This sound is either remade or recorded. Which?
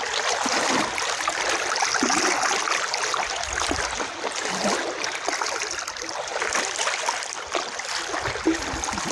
recorded